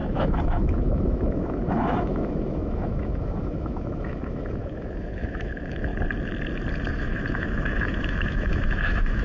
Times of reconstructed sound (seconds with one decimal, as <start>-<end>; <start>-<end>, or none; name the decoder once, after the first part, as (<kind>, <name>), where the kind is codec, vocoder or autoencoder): 0.0-5.9 (autoencoder, DAC-VAE); 6.9-9.2